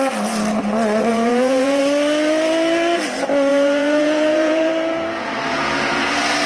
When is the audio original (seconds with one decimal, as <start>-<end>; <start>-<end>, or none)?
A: 0.0-1.1; 1.8-3.5; 4.7-5.5; 6.1-6.5